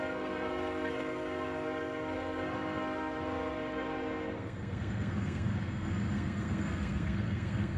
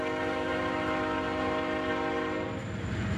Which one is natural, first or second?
second